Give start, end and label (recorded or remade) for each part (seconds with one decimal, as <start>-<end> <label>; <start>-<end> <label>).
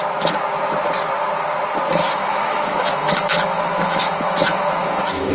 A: 0.0-2.0 recorded; 2.0-5.3 remade